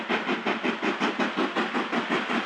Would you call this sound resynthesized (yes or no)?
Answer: no